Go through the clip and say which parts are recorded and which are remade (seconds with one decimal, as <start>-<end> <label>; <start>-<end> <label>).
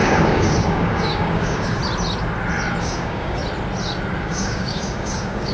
0.0-1.8 remade; 1.8-2.8 recorded; 2.8-3.4 remade; 3.4-4.2 recorded; 4.2-5.5 remade